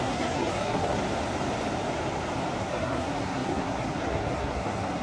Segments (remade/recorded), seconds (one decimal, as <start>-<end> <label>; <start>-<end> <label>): 0.0-1.0 remade; 1.0-2.6 recorded; 2.6-5.0 remade